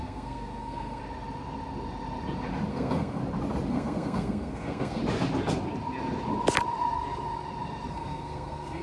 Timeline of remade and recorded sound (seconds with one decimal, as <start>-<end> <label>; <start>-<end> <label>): 0.0-1.0 remade; 1.0-2.7 recorded; 2.7-3.2 remade; 3.2-3.7 recorded; 3.7-5.0 remade; 5.0-7.9 recorded; 7.9-8.8 remade